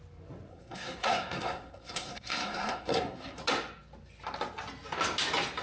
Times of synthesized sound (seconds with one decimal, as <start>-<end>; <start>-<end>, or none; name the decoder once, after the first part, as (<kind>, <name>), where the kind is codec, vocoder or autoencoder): 0.5-3.4 (codec, SNAC)